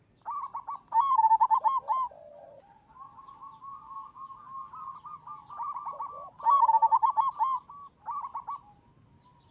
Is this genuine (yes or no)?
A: yes